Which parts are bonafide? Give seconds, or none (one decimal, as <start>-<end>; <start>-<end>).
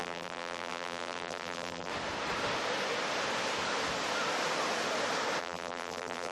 1.9-5.4